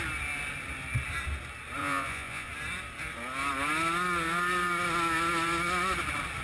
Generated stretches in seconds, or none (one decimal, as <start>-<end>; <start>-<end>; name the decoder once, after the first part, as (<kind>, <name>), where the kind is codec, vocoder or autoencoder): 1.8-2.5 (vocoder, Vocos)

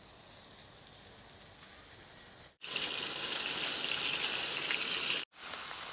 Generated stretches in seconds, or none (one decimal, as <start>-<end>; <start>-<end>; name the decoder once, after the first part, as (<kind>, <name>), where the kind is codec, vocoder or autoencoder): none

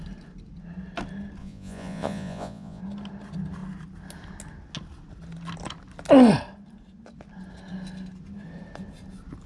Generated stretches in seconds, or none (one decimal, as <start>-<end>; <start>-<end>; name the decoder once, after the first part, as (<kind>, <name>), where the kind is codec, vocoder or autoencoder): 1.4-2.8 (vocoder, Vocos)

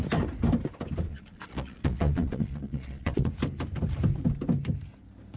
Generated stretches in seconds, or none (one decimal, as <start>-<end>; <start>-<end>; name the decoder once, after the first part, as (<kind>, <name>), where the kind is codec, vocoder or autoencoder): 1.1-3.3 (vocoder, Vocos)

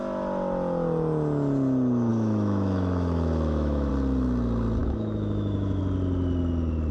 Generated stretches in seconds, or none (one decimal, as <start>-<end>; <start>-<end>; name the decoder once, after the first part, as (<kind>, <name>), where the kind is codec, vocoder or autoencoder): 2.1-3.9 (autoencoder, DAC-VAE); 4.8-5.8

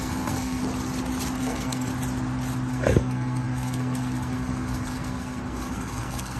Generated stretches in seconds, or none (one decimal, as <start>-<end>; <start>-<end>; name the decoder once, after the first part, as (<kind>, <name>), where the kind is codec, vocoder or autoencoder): 0.0-0.6 (codec, SNAC); 1.4-1.9; 2.7-6.4